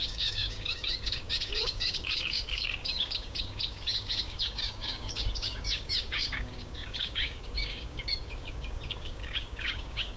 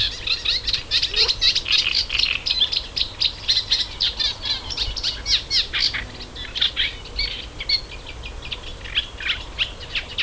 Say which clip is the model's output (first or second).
first